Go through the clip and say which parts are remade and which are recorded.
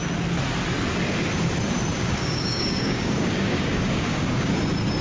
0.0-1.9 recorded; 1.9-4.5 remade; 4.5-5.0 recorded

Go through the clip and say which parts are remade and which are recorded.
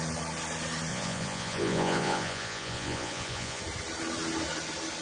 0.0-0.9 recorded; 0.9-3.6 remade; 3.6-5.0 recorded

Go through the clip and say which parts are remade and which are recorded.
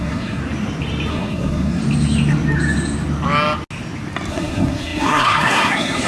0.0-0.4 remade; 0.4-1.1 recorded; 1.1-1.8 remade; 1.8-4.3 recorded; 4.3-6.1 remade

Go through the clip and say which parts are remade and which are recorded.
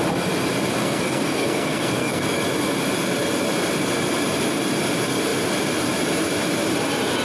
0.0-0.8 recorded; 0.8-2.4 remade; 2.4-7.2 recorded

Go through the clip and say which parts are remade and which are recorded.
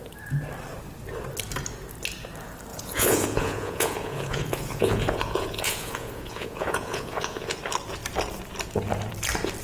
0.0-2.7 recorded; 2.7-7.6 remade; 7.6-9.6 recorded